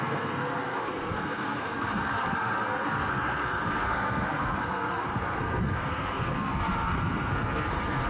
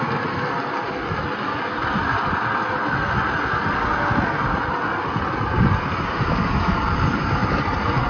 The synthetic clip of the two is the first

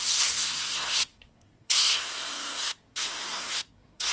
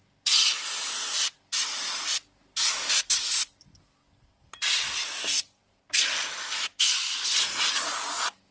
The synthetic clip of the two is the first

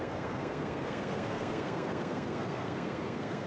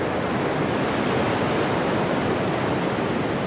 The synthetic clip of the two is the first